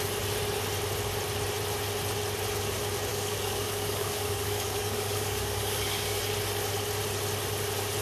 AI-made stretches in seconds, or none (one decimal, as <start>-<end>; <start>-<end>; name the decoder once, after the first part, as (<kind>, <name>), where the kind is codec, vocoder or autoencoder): 3.1-6.2 (codec, DAC)